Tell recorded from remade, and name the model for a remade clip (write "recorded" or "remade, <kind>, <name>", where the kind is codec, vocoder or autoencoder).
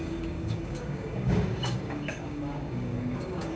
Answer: remade, codec, DAC